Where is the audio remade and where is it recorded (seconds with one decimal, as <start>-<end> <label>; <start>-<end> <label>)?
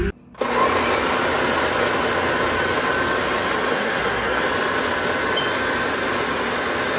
0.0-3.7 recorded; 3.7-4.4 remade; 4.4-7.0 recorded